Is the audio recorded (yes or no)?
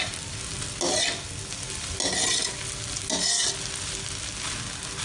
yes